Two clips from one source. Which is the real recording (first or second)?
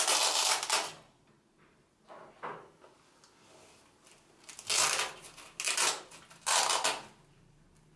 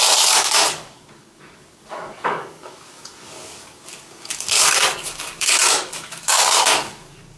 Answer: first